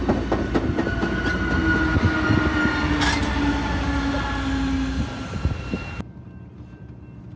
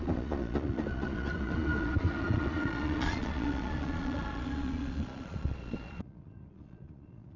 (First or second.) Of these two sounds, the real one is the first